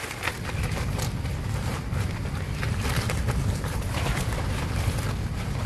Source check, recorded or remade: recorded